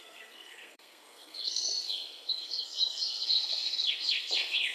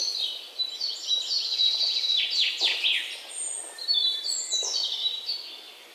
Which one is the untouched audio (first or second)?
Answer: second